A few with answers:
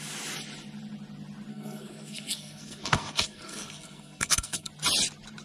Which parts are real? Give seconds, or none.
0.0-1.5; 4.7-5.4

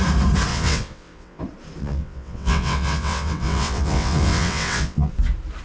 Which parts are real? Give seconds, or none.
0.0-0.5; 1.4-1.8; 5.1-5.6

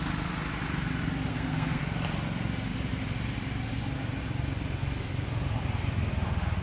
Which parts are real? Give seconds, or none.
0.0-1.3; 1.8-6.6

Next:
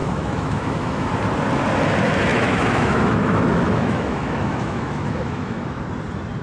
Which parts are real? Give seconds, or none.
1.1-2.3; 5.8-6.4